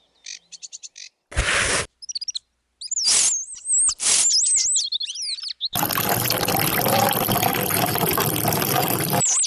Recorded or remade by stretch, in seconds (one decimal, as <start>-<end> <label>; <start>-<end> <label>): 0.0-9.5 recorded